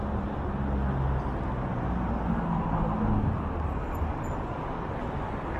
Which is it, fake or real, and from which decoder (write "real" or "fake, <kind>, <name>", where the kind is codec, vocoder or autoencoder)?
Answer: real